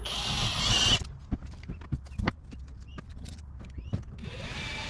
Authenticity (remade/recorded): recorded